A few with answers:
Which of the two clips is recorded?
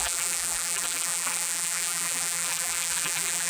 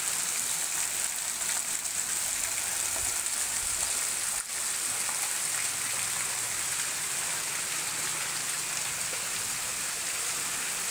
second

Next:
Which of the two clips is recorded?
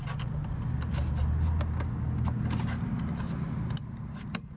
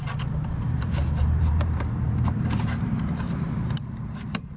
first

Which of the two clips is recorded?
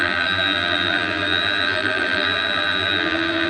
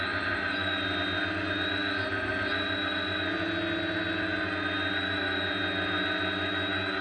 second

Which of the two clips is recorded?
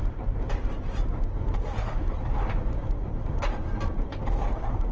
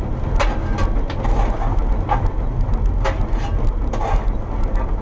second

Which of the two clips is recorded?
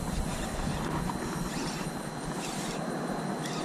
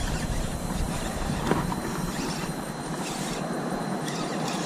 first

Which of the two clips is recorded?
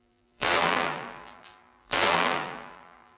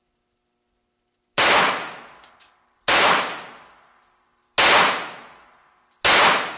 second